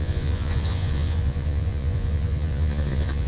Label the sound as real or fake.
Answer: fake